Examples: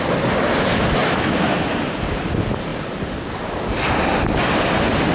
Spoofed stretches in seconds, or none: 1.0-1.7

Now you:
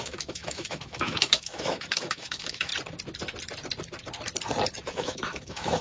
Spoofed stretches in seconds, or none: 0.0-2.7; 4.9-5.8

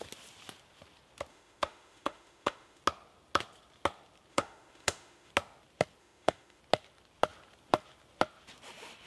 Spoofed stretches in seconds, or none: 1.3-2.8; 4.3-5.3; 6.0-6.6

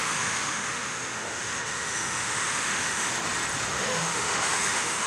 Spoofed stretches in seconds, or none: 0.0-3.1; 3.7-5.1

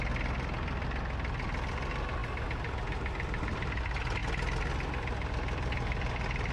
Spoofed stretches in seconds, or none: none

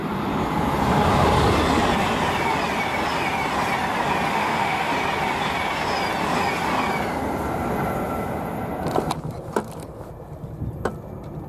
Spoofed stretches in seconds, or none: 4.3-4.9

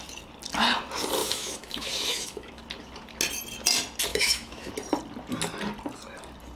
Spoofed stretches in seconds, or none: 1.2-2.6; 4.1-4.7

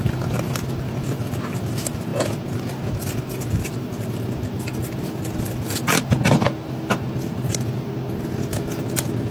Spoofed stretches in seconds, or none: none